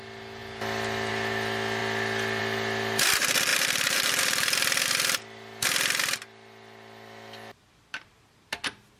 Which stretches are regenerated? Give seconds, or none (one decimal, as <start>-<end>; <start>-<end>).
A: none